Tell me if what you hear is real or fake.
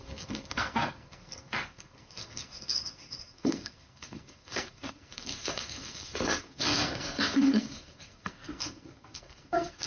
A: fake